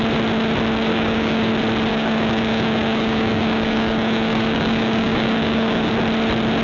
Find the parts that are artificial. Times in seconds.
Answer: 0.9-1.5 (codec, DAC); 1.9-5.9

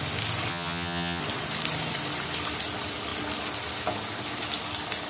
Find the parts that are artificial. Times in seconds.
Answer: 0.5-1.2 (vocoder, HiFi-GAN)

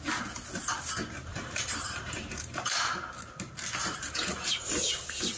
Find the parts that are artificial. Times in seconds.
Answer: 1.3-3.1 (vocoder, BigVGAN v2); 3.8-4.5

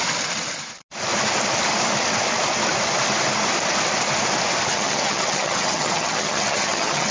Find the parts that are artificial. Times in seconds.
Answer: 4.7-7.1 (vocoder, HiFi-GAN)

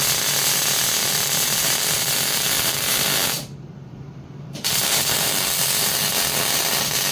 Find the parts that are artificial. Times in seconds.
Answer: 1.0-5.3 (vocoder, BigVGAN v2)

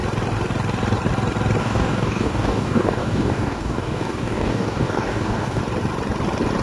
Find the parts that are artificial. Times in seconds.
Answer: 1.6-5.6 (codec, DAC)

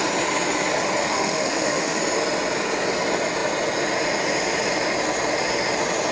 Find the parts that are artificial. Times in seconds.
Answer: 1.0-2.0 (autoencoder, DAC-VAE)